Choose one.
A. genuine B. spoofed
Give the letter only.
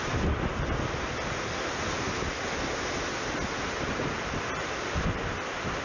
A